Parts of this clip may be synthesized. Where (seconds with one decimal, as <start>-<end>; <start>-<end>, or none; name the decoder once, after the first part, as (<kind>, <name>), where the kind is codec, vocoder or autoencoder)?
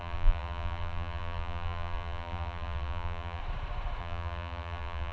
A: 0.0-3.4 (vocoder, BigVGAN v2); 4.0-5.1